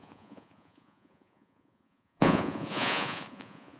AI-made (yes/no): yes